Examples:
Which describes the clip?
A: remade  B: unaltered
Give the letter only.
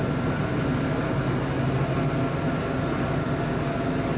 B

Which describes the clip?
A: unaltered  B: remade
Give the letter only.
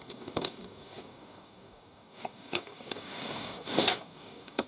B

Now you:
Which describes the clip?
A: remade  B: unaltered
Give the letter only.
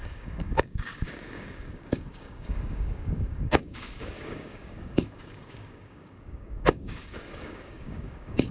A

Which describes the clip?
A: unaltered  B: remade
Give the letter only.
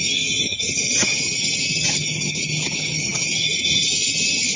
B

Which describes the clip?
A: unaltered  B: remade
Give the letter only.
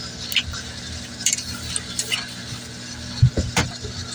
A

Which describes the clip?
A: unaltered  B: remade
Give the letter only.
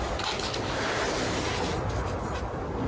A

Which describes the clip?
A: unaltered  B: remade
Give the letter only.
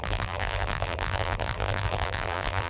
B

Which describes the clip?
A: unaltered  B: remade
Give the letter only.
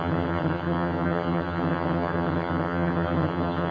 B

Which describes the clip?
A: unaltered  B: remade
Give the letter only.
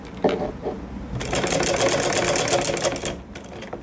A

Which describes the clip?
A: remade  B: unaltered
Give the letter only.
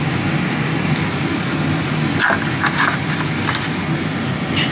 B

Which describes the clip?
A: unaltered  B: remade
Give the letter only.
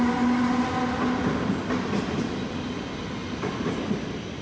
A